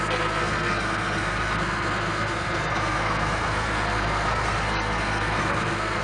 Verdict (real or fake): fake